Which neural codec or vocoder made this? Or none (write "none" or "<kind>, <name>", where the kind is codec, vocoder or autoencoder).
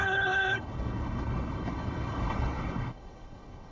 codec, HILCodec